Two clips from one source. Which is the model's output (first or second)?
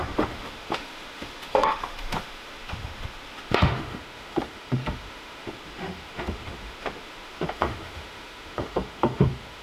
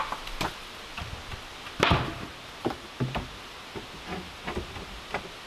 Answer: first